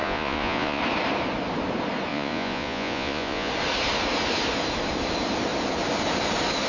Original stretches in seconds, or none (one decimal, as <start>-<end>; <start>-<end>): 0.8-2.1; 3.5-6.7